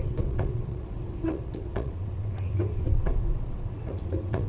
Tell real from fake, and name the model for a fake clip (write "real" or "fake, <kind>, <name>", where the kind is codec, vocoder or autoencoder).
fake, vocoder, WaveNeXt